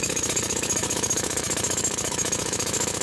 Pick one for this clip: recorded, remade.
remade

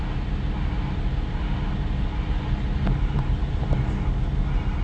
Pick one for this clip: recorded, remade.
recorded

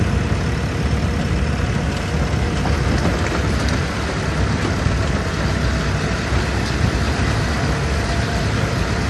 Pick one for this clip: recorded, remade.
recorded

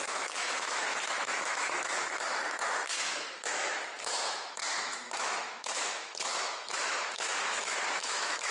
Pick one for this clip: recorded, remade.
remade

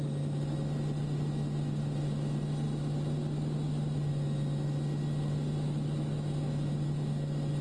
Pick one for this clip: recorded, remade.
recorded